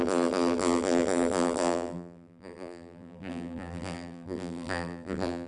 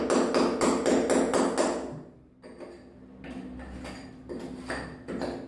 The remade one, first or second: first